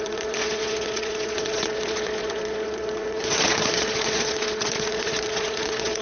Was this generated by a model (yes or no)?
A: yes